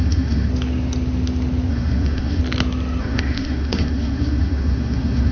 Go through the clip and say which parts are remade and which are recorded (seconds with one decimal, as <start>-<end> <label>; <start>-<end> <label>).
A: 0.0-0.5 remade; 0.5-1.7 recorded; 1.7-2.4 remade; 2.4-3.0 recorded; 3.0-5.3 remade